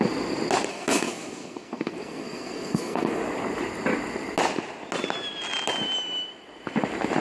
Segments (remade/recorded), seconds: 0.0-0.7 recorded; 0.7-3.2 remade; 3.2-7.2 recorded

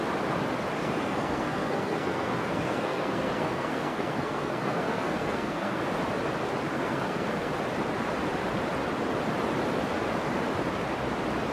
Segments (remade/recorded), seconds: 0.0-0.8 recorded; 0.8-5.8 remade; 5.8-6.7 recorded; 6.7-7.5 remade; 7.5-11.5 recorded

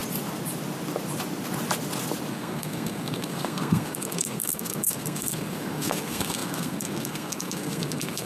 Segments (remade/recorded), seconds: 0.0-2.3 recorded; 2.3-8.3 remade

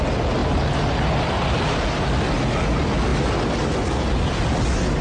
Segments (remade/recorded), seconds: 0.0-5.0 recorded

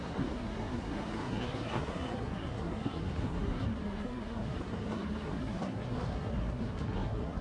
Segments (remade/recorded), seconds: 0.0-7.4 remade

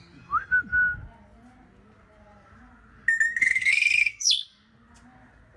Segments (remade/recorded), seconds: 0.0-3.4 recorded; 3.4-4.3 remade; 4.3-5.6 recorded

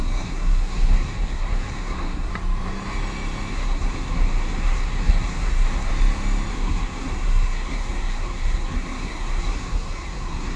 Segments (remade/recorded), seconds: 0.0-2.3 remade; 2.3-3.5 recorded; 3.5-5.9 remade; 5.9-6.5 recorded; 6.5-10.6 remade

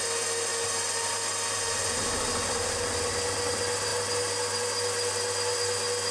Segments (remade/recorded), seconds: 0.0-6.1 recorded